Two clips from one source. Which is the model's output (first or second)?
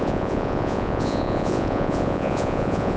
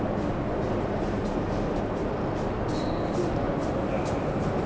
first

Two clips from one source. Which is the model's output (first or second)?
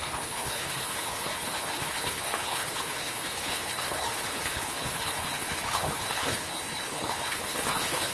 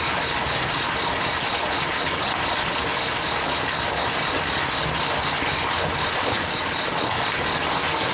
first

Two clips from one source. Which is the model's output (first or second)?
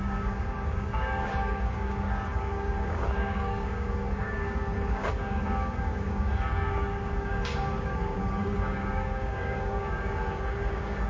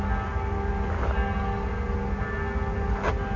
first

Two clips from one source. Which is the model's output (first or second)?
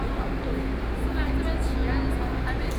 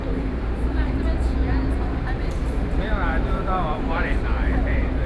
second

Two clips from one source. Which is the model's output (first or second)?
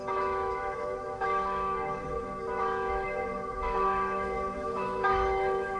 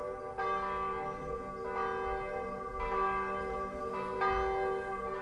first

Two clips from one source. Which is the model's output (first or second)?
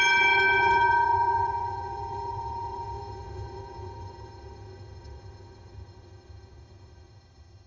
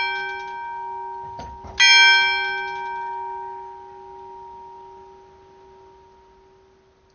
first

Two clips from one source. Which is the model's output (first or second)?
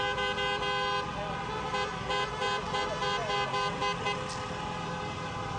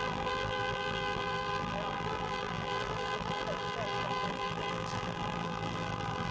second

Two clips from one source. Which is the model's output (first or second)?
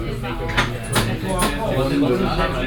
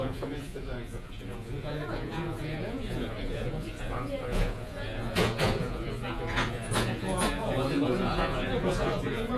second